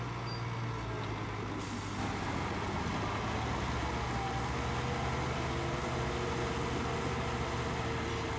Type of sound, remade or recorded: recorded